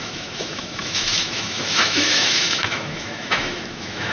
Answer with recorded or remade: remade